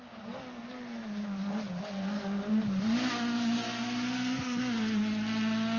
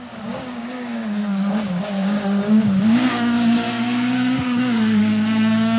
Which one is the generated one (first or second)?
second